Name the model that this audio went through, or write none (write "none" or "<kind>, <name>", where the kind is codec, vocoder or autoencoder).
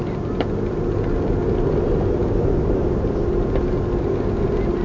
none